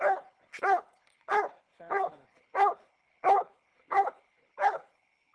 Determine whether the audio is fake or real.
fake